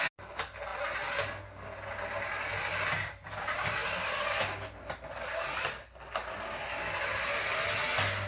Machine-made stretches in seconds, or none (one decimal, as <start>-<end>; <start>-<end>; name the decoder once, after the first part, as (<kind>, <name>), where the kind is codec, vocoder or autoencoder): none